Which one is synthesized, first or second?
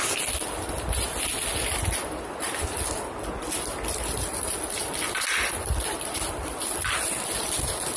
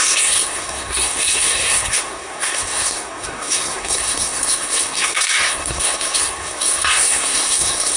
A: second